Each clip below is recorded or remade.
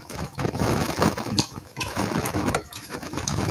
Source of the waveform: remade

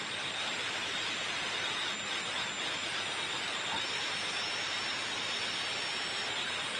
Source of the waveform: recorded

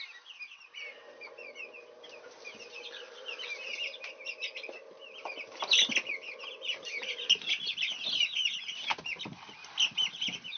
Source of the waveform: recorded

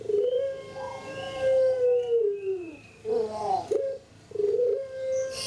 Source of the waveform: recorded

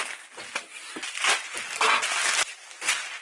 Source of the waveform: recorded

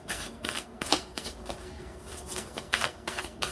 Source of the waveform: remade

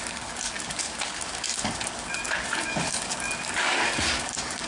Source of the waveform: remade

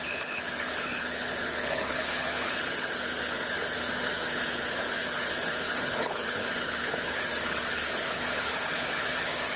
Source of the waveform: remade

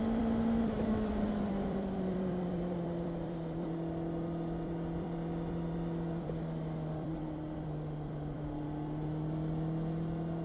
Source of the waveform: remade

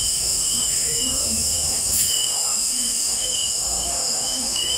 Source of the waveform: remade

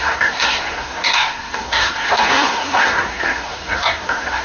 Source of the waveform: remade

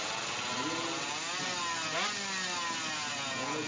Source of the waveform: recorded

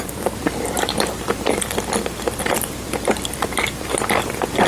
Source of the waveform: remade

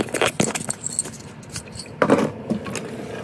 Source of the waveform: recorded